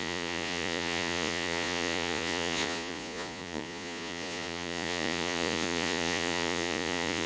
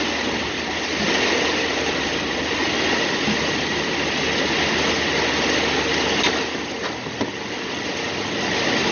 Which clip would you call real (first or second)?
second